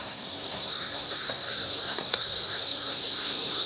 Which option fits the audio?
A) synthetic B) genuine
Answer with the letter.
A